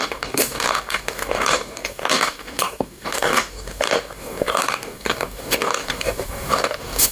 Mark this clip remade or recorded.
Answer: remade